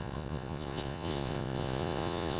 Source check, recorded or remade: remade